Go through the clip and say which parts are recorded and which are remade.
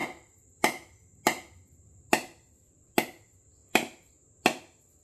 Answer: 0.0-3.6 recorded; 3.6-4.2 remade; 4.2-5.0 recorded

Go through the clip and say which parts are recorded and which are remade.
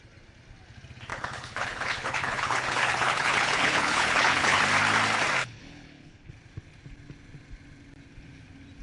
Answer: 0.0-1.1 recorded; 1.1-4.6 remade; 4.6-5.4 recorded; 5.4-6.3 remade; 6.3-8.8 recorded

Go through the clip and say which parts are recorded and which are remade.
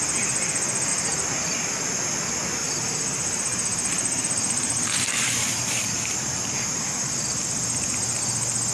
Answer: 0.0-0.9 recorded; 0.9-1.7 remade; 1.7-2.6 recorded; 2.6-6.8 remade; 6.8-8.7 recorded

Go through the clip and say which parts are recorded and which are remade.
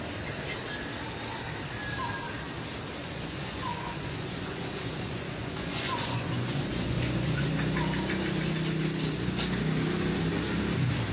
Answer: 0.0-3.0 recorded; 3.0-7.6 remade; 7.6-11.1 recorded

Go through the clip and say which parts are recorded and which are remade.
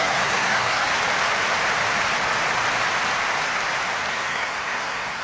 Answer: 0.0-1.0 remade; 1.0-4.1 recorded; 4.1-5.2 remade